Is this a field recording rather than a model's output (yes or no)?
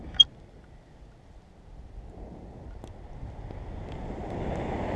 yes